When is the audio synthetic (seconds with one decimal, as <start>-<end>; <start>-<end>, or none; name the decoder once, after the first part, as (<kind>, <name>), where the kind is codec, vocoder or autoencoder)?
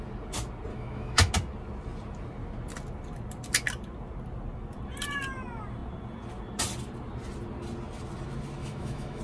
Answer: 0.7-1.3 (autoencoder, DAC-VAE); 8.6-9.2